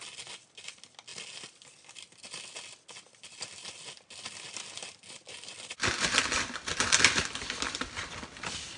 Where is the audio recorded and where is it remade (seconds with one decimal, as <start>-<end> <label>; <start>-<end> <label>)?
0.0-8.8 recorded

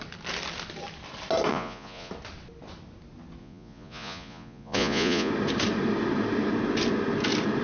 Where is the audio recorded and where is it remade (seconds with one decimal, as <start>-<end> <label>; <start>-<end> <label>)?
0.0-1.5 recorded; 1.5-2.1 remade; 2.1-3.4 recorded; 3.4-5.3 remade; 5.3-7.6 recorded

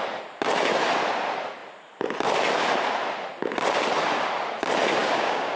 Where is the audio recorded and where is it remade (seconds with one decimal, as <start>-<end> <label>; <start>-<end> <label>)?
0.0-5.0 recorded; 5.0-5.6 remade

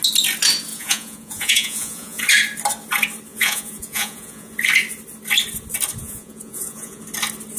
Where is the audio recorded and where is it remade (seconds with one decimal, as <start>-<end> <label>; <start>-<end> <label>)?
0.0-0.7 recorded; 0.7-2.2 remade; 2.2-3.3 recorded; 3.3-4.5 remade; 4.5-6.0 recorded; 6.0-7.0 remade; 7.0-7.6 recorded

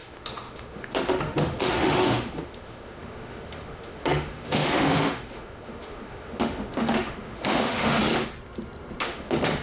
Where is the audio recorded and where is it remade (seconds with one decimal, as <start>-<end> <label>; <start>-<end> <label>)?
0.0-8.0 remade; 8.0-9.0 recorded; 9.0-9.6 remade

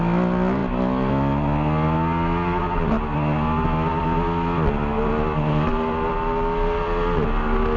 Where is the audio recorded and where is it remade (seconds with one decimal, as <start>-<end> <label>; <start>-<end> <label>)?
0.0-7.8 recorded

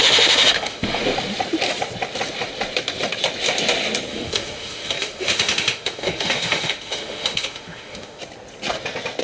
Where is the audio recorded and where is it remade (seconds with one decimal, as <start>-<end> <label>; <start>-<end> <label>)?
0.0-1.0 remade; 1.0-4.1 recorded; 4.1-8.2 remade; 8.2-9.2 recorded

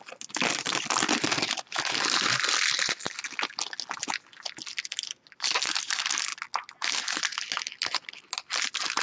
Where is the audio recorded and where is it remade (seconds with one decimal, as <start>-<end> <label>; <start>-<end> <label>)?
0.0-9.0 recorded